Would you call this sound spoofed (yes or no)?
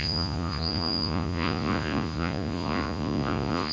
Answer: yes